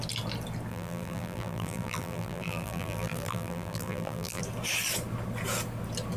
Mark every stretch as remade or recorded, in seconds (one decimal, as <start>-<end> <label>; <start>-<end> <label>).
0.0-0.7 recorded; 0.7-4.4 remade; 4.4-6.2 recorded